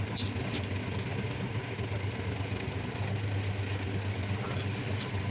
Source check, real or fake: real